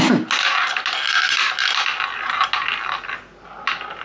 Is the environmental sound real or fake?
real